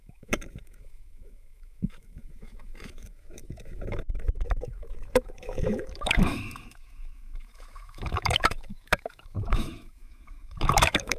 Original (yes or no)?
no